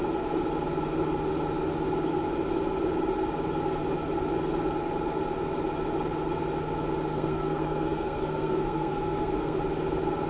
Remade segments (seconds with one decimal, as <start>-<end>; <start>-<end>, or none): 7.1-9.6